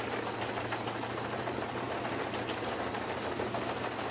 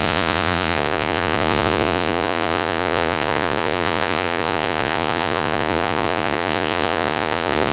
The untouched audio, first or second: first